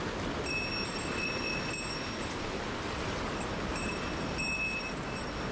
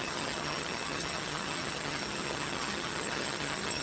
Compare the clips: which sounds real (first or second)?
first